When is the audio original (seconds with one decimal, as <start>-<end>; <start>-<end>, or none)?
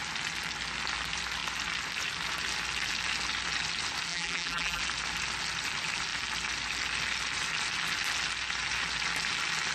0.0-4.1; 4.8-9.7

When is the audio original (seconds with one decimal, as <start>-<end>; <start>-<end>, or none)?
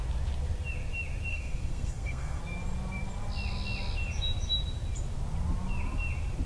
0.0-1.3; 2.4-6.5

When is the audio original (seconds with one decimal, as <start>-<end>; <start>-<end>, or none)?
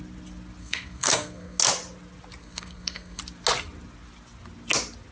0.0-0.6; 1.6-2.4; 3.2-5.1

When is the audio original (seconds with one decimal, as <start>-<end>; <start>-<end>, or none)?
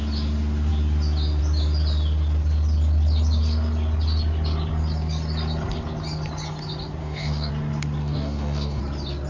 0.0-7.0; 7.5-8.0; 8.8-9.3